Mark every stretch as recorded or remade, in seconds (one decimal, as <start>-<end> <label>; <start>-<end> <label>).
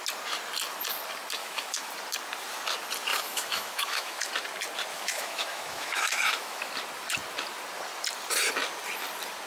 0.0-1.4 recorded; 1.4-1.9 remade; 1.9-3.1 recorded; 3.1-4.3 remade; 4.3-4.9 recorded; 4.9-6.7 remade; 6.7-9.5 recorded